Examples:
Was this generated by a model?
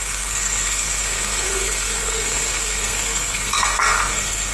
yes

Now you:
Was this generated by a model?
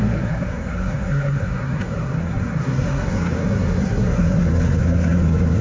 yes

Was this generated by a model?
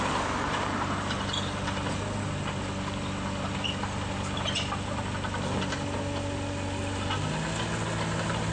no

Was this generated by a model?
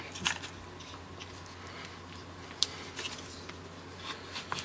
no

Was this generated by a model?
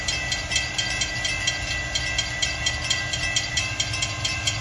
no